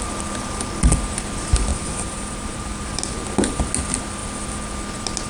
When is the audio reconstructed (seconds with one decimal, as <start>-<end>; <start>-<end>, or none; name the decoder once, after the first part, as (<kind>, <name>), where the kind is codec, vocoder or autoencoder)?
1.7-3.0 (vocoder, BigVGAN v2)